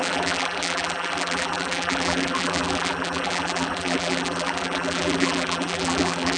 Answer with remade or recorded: remade